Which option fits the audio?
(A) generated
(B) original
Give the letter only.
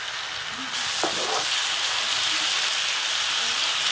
B